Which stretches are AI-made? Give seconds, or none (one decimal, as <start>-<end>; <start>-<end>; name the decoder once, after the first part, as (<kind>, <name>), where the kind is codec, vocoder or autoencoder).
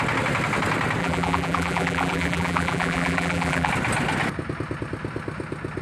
1.0-3.7 (vocoder, BigVGAN v2)